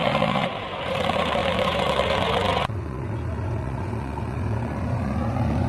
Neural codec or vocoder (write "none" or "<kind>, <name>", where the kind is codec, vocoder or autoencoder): vocoder, Vocos